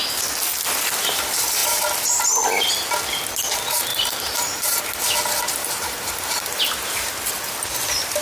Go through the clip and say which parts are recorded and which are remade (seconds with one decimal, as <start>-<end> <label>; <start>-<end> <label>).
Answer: 0.0-3.9 recorded; 3.9-4.8 remade; 4.8-5.6 recorded; 5.6-6.6 remade; 6.6-8.2 recorded